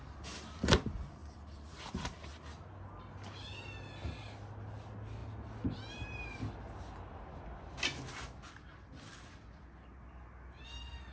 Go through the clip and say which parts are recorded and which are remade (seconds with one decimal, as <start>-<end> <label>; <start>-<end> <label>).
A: 0.0-11.1 recorded